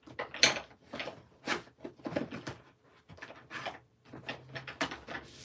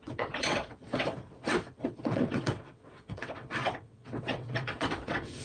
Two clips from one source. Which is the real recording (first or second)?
first